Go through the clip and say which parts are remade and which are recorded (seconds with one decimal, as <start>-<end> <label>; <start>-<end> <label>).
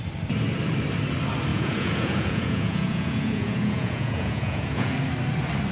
0.0-1.5 recorded; 1.5-4.9 remade; 4.9-5.7 recorded